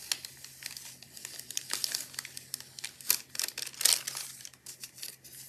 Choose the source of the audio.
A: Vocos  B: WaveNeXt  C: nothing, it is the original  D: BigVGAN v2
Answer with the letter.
C